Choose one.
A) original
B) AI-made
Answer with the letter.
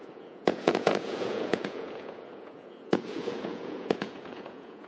B